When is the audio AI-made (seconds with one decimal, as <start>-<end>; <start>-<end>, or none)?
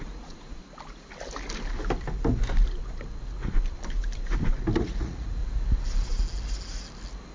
0.0-0.6; 4.8-5.4